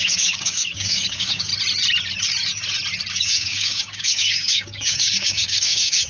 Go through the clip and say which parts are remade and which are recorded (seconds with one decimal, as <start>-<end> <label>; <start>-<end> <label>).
0.0-1.5 remade; 1.5-3.1 recorded; 3.1-6.1 remade

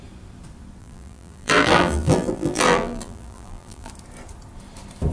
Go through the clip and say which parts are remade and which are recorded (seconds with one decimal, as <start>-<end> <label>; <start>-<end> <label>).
0.0-0.8 recorded; 0.8-3.9 remade; 3.9-5.1 recorded